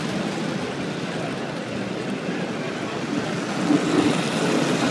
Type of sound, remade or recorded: recorded